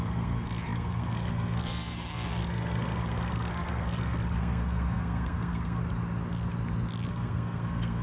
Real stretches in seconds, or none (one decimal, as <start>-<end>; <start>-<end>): 5.8-7.1